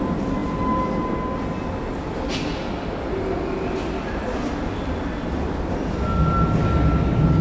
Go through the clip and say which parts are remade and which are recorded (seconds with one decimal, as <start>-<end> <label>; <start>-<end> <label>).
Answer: 0.0-7.4 recorded